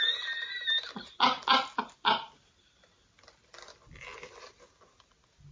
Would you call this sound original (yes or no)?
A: yes